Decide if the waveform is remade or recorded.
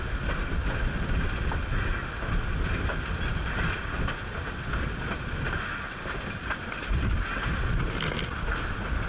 recorded